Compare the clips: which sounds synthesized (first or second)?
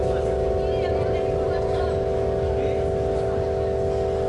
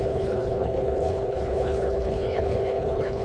second